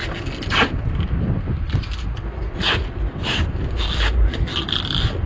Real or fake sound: real